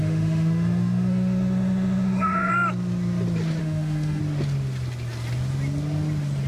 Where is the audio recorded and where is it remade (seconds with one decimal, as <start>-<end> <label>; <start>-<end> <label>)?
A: 0.0-2.5 remade; 2.5-3.6 recorded; 3.6-4.2 remade; 4.2-6.5 recorded